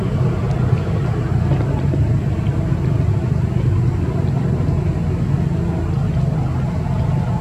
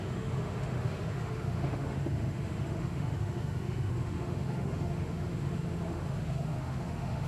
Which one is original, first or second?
first